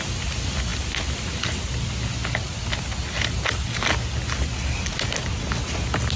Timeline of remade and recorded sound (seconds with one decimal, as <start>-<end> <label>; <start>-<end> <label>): 0.0-6.2 recorded